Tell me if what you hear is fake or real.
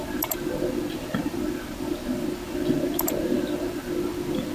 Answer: fake